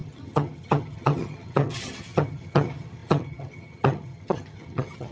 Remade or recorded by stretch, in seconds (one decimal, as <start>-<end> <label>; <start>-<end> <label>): 0.0-5.1 remade